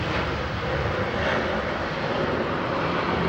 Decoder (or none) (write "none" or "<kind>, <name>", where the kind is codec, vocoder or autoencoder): none